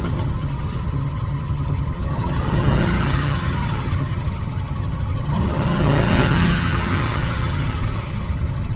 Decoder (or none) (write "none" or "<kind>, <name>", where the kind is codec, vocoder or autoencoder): vocoder, HiFi-GAN